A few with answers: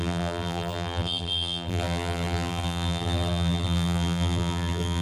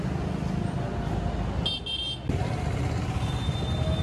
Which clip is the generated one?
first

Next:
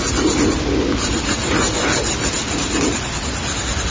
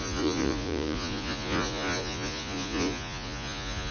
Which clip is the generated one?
second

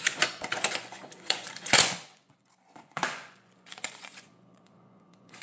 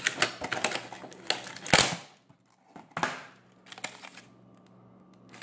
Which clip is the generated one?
first